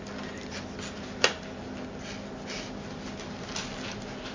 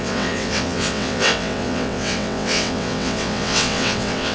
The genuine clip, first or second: first